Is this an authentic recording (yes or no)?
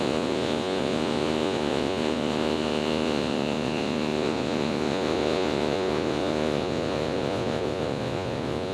no